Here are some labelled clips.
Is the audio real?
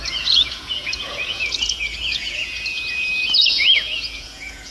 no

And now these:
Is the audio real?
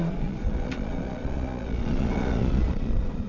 no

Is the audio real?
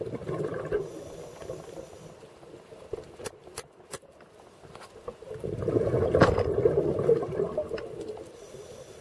yes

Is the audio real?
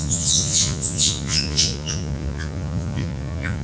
no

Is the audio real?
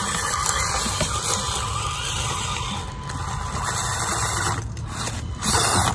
yes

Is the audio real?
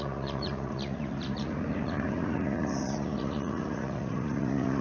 no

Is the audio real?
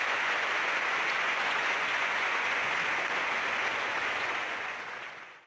no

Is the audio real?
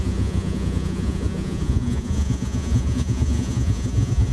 no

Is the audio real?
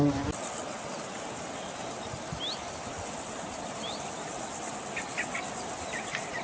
yes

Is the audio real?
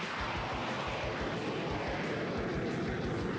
yes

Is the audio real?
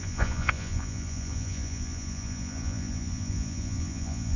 no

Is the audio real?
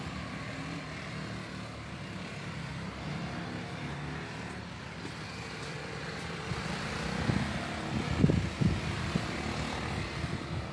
yes